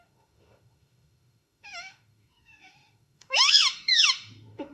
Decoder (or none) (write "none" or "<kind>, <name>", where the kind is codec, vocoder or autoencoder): autoencoder, DAC-VAE